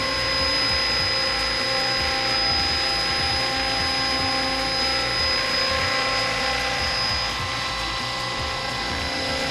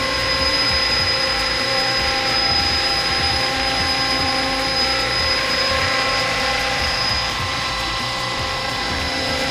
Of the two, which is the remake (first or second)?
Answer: second